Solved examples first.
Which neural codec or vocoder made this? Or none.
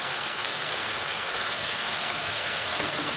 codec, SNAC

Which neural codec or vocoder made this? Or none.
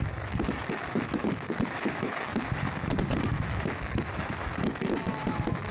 autoencoder, DAC-VAE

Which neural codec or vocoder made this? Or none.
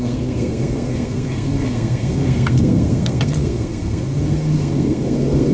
codec, SNAC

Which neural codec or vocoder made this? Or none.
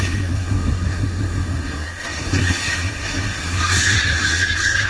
codec, SNAC